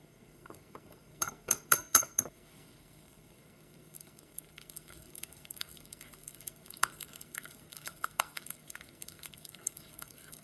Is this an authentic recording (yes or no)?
no